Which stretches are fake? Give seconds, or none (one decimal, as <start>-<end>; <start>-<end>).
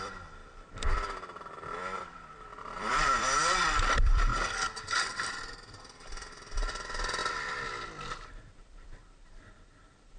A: 0.0-4.3; 5.3-7.2; 8.0-10.2